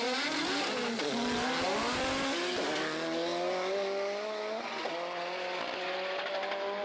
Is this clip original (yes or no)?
yes